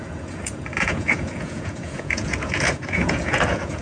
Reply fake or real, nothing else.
fake